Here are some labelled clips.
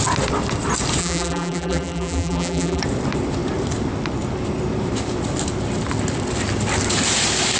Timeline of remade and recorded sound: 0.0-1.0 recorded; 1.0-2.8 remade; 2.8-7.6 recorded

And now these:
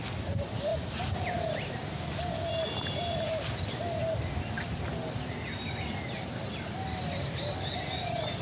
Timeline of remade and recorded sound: 0.0-5.9 recorded; 5.9-6.4 remade; 6.4-8.4 recorded